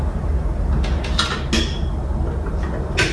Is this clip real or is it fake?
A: real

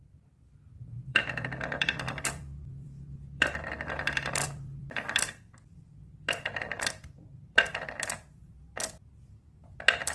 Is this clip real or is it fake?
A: fake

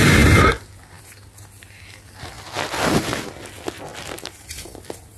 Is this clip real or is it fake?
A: real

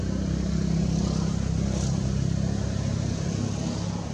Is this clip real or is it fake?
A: real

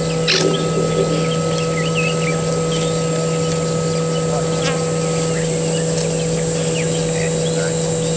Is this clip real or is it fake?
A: real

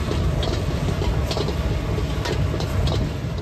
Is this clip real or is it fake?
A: real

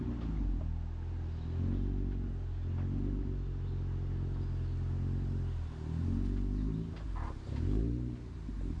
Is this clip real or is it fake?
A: real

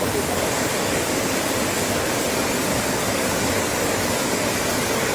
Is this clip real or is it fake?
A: fake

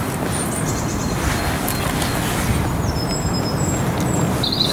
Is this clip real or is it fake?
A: real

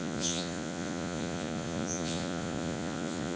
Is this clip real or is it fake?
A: fake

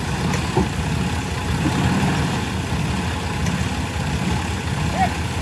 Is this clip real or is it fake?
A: real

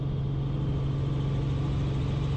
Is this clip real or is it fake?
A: real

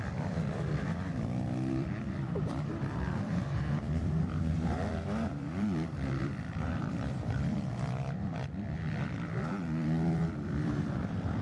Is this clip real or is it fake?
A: fake